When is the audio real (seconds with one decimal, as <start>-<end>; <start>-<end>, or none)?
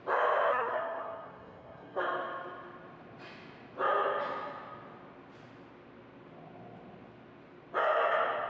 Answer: 0.0-0.5; 2.0-8.5